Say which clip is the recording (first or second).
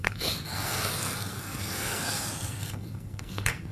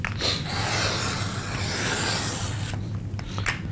second